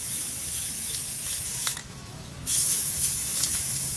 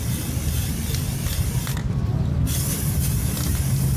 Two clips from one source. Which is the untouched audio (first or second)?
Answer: second